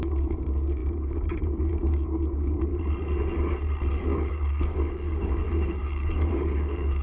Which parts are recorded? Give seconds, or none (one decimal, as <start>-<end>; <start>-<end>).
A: 2.7-3.9